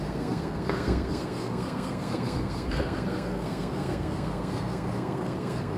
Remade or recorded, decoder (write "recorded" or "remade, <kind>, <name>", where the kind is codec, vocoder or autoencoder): remade, codec, SNAC